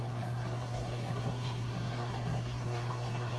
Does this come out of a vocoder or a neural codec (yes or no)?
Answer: yes